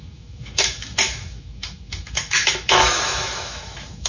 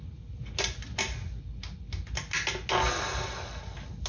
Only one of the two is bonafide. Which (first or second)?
second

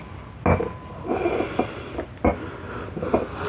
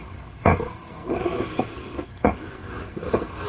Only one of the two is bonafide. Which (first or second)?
first